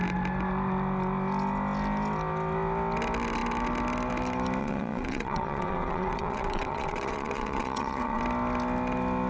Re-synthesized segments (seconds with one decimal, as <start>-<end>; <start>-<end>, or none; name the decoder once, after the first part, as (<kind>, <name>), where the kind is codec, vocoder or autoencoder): 4.6-8.2 (vocoder, WaveNeXt)